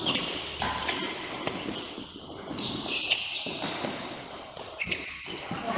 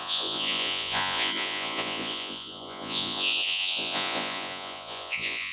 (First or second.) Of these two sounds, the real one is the first